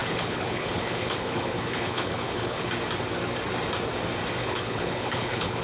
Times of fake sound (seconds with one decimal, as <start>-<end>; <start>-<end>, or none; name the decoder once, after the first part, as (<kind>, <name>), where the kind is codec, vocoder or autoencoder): 0.0-2.7 (codec, HILCodec); 4.4-5.6